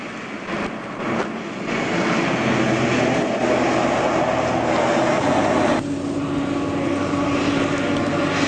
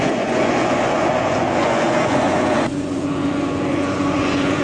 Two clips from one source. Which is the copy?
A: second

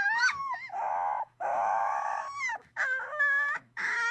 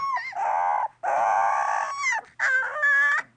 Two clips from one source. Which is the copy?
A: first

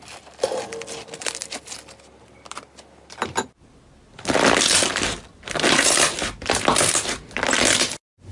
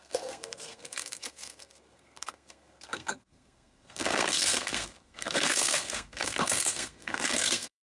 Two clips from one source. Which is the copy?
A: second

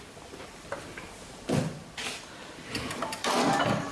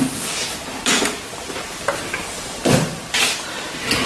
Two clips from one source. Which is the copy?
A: first